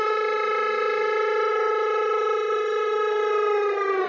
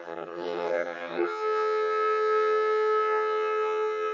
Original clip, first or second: first